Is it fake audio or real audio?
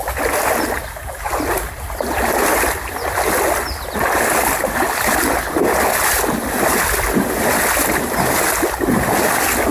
real